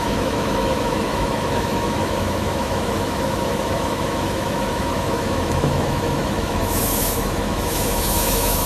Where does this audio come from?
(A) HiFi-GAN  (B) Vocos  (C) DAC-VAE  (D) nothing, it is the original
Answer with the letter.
C